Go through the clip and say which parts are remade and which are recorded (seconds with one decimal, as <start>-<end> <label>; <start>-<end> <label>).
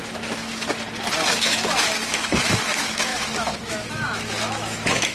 0.0-0.5 remade; 0.5-1.3 recorded; 1.3-5.1 remade